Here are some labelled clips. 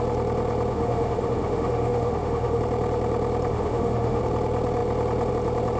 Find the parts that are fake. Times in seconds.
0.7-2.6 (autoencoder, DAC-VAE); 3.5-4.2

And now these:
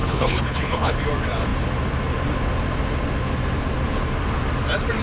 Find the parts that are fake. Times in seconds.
0.0-0.9 (codec, HILCodec)